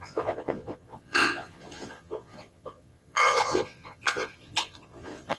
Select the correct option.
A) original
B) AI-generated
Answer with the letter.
B